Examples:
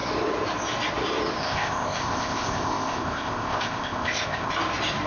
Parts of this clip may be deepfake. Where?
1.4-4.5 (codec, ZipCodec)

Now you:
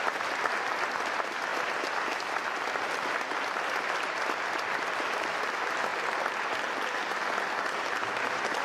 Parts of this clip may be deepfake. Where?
none

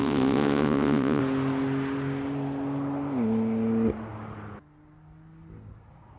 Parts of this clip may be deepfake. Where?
0.0-1.2 (vocoder, WaveNeXt)

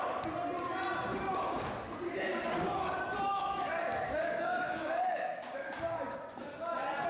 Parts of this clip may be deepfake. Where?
1.1-1.6 (codec, DAC); 2.4-3.0; 3.4-6.2

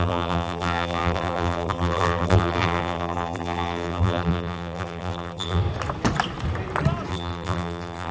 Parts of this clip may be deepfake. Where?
0.0-5.6 (vocoder, BigVGAN v2); 7.1-8.1

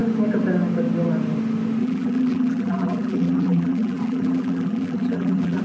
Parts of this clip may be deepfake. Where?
1.8-5.6 (vocoder, BigVGAN v2)